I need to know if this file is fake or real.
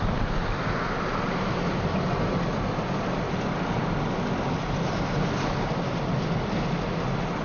real